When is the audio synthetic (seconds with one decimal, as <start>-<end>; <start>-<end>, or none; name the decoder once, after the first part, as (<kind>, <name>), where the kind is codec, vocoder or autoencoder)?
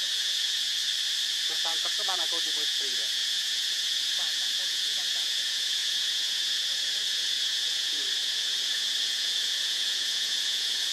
0.0-0.7 (vocoder, Vocos); 1.3-10.9